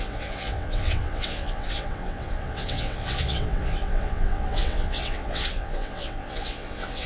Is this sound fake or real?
fake